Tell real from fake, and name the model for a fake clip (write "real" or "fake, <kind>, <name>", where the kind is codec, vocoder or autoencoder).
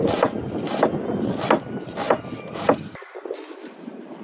real